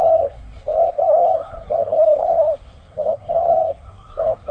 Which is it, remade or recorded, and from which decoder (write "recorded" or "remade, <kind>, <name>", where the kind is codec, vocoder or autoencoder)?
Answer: remade, codec, SNAC